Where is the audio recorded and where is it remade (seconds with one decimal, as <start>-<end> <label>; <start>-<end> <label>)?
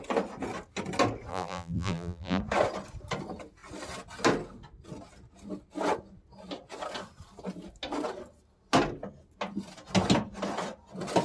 0.0-1.3 recorded; 1.3-2.4 remade; 2.4-11.2 recorded